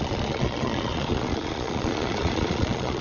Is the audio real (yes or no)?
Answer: no